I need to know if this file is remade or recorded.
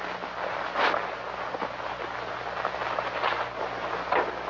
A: recorded